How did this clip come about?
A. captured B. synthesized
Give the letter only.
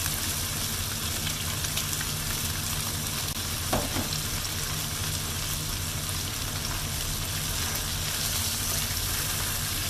A